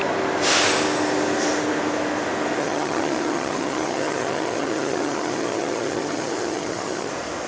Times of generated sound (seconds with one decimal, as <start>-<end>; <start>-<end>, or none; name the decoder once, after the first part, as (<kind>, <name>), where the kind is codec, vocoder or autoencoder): 2.6-7.1 (vocoder, HiFi-GAN)